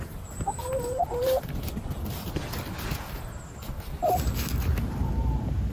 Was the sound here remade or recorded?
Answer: recorded